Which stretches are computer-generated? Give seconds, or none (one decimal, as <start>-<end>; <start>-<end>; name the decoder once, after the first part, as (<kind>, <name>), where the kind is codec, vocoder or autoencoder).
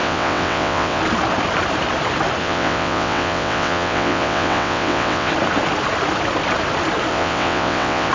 0.0-1.0 (vocoder, WaveNeXt); 2.4-5.3; 7.1-8.1